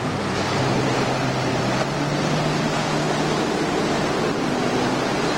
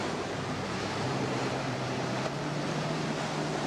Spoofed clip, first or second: second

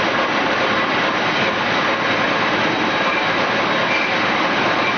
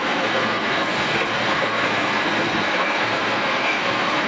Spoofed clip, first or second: second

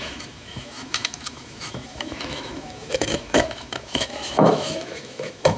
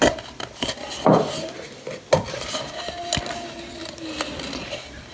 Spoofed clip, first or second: first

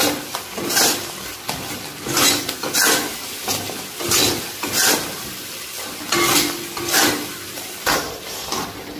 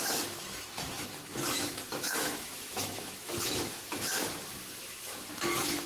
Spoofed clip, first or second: second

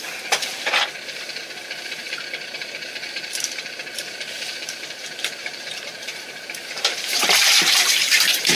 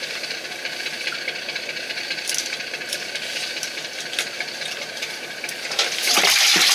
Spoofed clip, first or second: first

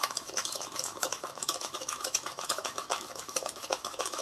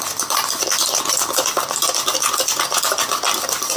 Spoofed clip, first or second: first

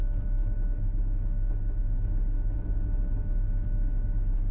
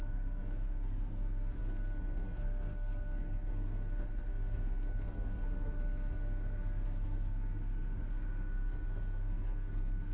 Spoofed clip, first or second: second